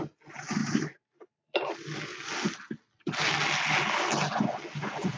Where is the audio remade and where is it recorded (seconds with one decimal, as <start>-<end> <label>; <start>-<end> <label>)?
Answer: 0.0-0.6 recorded; 0.6-1.7 remade; 1.7-5.2 recorded